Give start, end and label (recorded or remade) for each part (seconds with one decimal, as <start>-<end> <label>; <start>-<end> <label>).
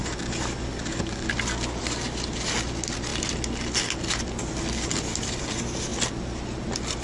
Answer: 0.0-7.0 recorded